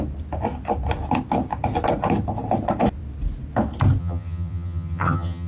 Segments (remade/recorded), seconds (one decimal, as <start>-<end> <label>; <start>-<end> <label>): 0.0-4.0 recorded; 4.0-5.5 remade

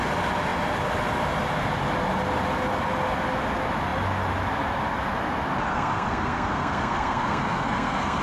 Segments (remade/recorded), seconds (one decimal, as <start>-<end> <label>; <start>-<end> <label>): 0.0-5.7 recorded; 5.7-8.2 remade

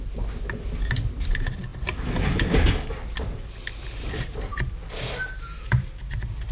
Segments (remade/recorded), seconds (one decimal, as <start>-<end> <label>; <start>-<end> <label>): 0.0-6.5 recorded

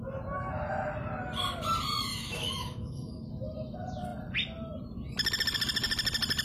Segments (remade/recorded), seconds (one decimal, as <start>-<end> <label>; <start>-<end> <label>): 0.0-2.1 recorded; 2.1-3.3 remade; 3.3-6.4 recorded

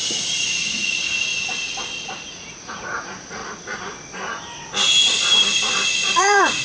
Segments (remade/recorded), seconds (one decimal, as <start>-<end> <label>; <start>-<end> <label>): 0.0-1.3 remade; 1.3-2.3 recorded; 2.3-3.4 remade; 3.4-6.0 recorded; 6.0-6.6 remade